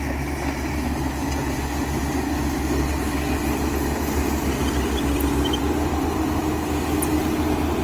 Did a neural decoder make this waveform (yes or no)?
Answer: no